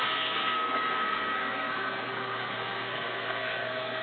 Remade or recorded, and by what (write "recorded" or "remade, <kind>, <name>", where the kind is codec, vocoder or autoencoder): remade, codec, SNAC